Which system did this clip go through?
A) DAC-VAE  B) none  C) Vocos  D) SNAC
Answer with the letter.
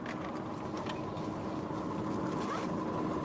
B